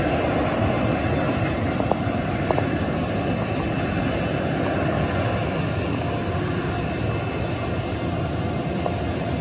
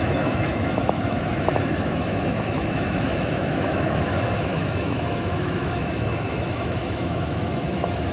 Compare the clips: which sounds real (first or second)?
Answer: first